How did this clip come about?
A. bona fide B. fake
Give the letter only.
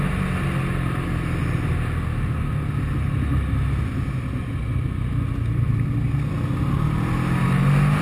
A